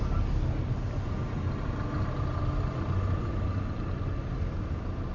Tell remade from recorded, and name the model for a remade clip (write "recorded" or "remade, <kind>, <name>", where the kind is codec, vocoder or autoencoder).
recorded